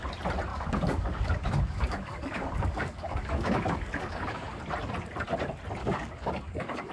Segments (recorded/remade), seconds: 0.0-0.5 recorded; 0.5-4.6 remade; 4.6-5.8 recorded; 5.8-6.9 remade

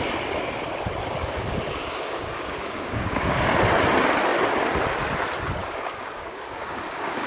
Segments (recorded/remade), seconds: 0.0-1.2 recorded; 1.2-3.5 remade; 3.5-5.6 recorded; 5.6-7.3 remade

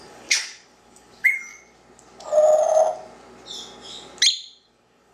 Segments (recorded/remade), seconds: 0.0-1.5 remade; 1.5-4.6 recorded; 4.6-5.1 remade

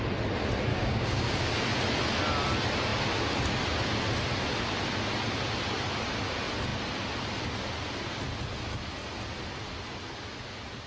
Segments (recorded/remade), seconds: 0.0-0.7 recorded; 0.7-1.5 remade; 1.5-10.9 recorded

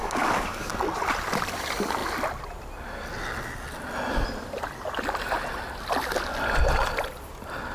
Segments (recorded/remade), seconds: 0.0-0.7 remade; 0.7-7.7 recorded

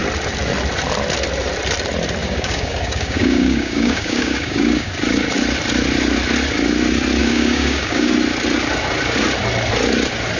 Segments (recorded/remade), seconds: 0.0-2.2 recorded; 2.2-4.9 remade; 4.9-7.2 recorded; 7.2-8.1 remade; 8.1-10.4 recorded

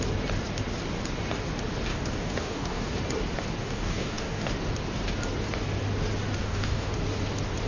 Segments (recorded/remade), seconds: 0.0-1.9 recorded; 1.9-2.9 remade; 2.9-3.6 recorded; 3.6-4.5 remade; 4.5-6.4 recorded; 6.4-6.9 remade; 6.9-7.7 recorded